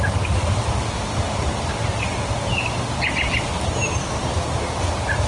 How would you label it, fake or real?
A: real